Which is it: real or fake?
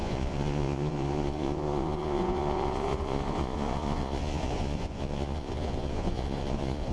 fake